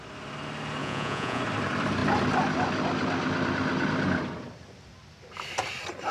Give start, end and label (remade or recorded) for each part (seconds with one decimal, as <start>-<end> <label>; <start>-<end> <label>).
0.0-0.8 recorded; 0.8-1.4 remade; 1.4-6.1 recorded